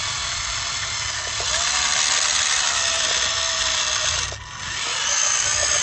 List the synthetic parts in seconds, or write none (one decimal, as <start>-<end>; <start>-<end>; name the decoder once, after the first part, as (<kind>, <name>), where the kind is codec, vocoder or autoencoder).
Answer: none